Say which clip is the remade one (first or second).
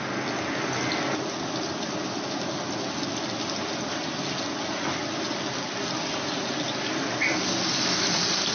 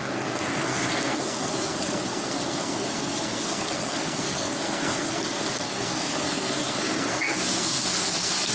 second